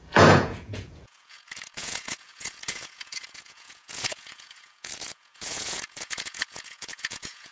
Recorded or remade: remade